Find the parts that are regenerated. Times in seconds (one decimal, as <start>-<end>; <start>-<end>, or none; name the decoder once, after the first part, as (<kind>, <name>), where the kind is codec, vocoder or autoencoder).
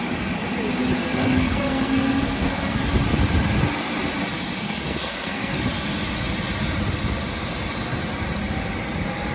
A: 1.0-2.8 (codec, SNAC); 4.6-5.6